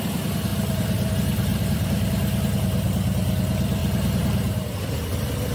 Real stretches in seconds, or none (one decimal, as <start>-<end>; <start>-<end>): 0.0-0.5; 1.1-1.5; 2.6-3.8; 4.7-5.5